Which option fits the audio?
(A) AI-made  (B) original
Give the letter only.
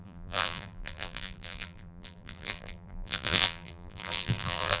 A